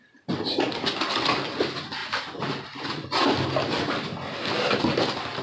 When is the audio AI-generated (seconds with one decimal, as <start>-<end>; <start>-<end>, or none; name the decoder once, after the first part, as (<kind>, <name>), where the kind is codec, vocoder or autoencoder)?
none